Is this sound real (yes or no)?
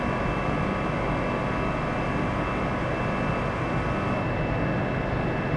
yes